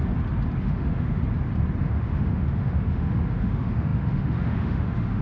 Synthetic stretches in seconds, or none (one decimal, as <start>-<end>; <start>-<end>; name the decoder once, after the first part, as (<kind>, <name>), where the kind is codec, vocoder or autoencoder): 0.6-1.2 (autoencoder, DAC-VAE); 1.8-5.2